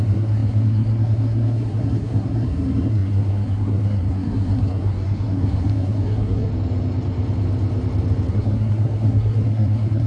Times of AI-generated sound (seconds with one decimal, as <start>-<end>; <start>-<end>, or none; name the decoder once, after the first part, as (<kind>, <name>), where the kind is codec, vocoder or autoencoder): 0.0-6.5 (codec, SNAC); 8.3-10.1